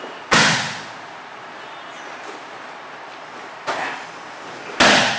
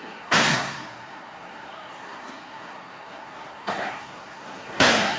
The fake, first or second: second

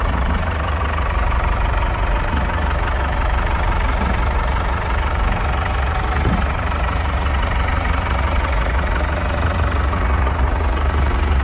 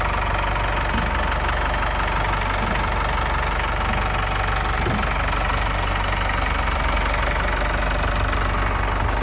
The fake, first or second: first